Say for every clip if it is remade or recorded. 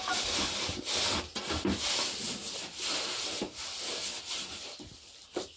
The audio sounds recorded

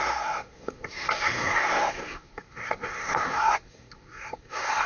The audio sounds remade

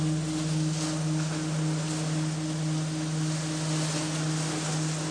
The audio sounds recorded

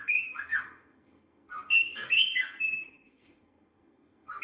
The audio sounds remade